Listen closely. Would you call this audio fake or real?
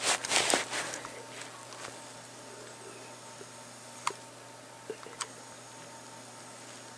real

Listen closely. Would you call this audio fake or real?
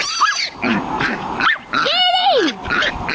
fake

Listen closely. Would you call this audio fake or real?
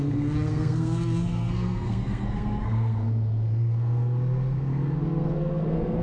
fake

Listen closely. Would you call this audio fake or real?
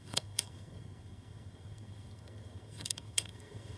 fake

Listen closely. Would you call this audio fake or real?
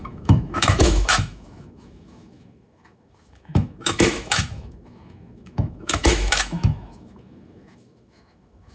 fake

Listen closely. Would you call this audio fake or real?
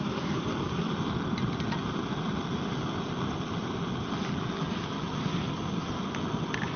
real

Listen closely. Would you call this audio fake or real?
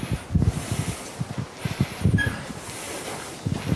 real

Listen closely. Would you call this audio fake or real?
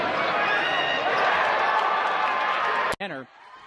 real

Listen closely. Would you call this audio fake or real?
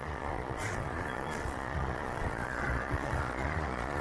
fake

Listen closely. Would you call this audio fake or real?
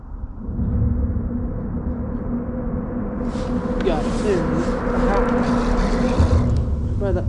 real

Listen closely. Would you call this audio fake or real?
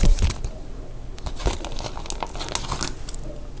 real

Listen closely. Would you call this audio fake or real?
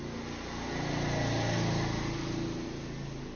real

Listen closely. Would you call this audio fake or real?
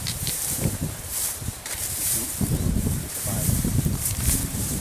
fake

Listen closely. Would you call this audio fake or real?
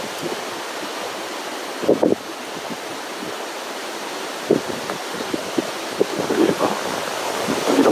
real